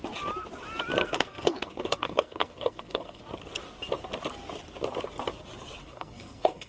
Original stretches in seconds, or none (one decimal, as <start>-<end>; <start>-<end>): 0.0-1.0; 3.2-5.8